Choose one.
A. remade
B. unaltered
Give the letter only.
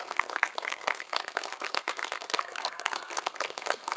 A